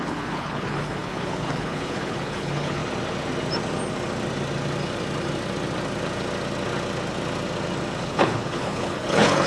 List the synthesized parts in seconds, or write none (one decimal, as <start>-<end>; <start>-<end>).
0.0-2.8; 8.0-9.5

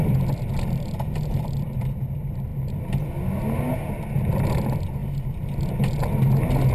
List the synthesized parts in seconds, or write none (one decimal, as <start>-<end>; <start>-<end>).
none